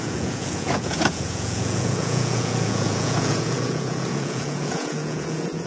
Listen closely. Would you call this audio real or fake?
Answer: fake